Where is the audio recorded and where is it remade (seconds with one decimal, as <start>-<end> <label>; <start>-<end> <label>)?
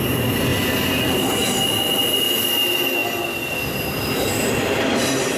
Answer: 0.0-5.4 recorded